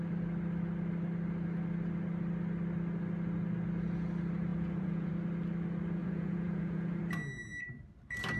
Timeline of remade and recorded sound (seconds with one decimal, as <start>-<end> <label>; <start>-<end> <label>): 0.0-4.5 recorded; 4.5-5.1 remade; 5.1-6.0 recorded; 6.0-7.0 remade; 7.0-8.4 recorded

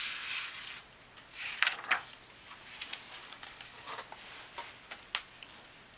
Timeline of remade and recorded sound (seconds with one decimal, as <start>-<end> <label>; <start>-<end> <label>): 0.0-1.4 recorded; 1.4-2.2 remade; 2.2-3.2 recorded; 3.2-4.0 remade; 4.0-6.0 recorded

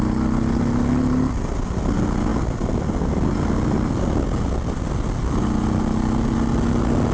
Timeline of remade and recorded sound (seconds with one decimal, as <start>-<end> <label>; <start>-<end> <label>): 0.0-7.1 recorded

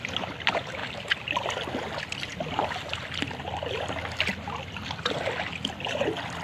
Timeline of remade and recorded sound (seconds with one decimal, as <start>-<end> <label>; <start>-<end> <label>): 0.0-6.4 recorded

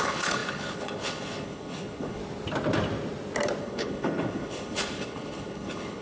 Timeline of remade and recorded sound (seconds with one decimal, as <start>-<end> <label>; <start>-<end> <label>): 0.0-2.2 remade; 2.2-3.6 recorded; 3.6-6.0 remade

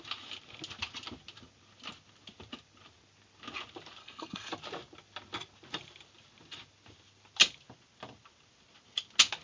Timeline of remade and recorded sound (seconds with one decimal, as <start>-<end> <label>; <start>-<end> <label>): 0.0-4.0 recorded; 4.0-4.5 remade; 4.5-9.4 recorded

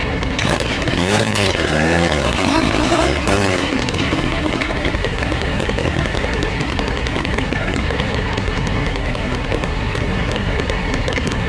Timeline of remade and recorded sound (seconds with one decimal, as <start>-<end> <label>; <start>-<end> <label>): 0.0-11.5 remade

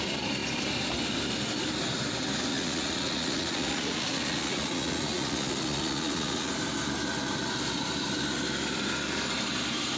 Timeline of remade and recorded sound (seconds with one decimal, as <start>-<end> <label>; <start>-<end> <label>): 0.0-2.5 recorded; 2.5-6.5 remade; 6.5-10.0 recorded